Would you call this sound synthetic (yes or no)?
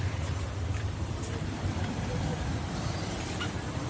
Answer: yes